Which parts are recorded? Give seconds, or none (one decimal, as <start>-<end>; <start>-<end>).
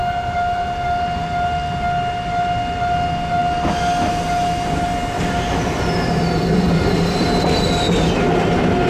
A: 0.0-8.9